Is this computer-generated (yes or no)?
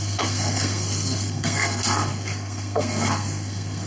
yes